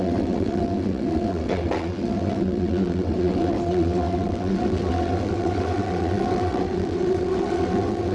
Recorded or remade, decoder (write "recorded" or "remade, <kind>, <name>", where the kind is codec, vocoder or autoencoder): remade, vocoder, WaveNeXt